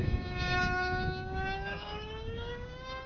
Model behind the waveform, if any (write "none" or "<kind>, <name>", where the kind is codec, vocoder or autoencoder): codec, DAC